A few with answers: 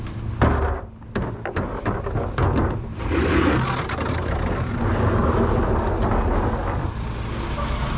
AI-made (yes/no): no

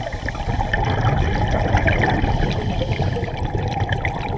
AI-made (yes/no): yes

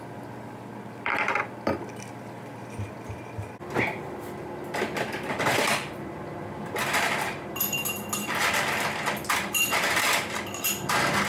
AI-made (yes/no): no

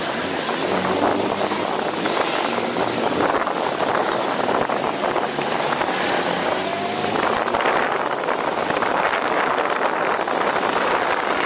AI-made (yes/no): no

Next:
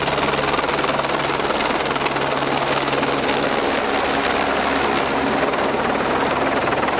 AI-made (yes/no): no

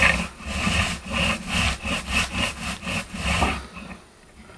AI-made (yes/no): no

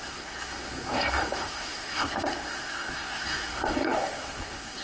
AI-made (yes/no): yes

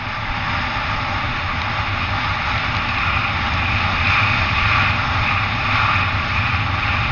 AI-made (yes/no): no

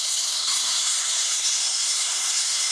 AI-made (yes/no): yes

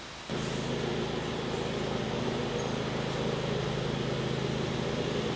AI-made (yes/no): no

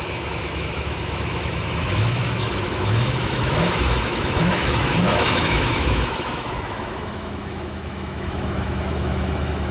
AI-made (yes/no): yes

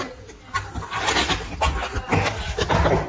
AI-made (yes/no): no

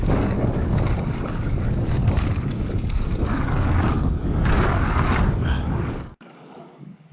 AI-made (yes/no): yes